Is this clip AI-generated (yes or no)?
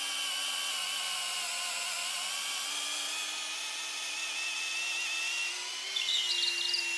no